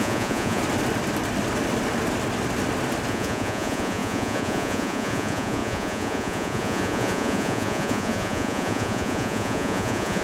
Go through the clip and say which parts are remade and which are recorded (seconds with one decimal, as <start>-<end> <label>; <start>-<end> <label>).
0.0-0.6 remade; 0.6-3.1 recorded; 3.1-10.2 remade